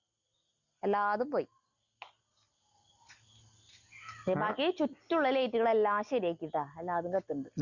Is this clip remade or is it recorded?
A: recorded